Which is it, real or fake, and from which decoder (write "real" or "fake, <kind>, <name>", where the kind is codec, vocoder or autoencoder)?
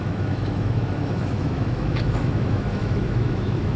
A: fake, autoencoder, DAC-VAE